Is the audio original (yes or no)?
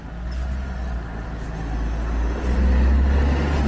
yes